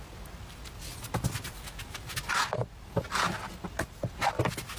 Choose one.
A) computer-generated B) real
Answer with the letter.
B